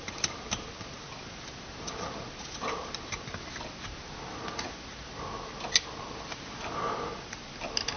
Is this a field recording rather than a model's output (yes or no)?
yes